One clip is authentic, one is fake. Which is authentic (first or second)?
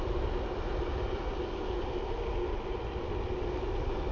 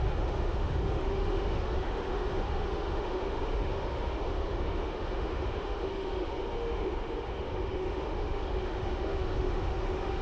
first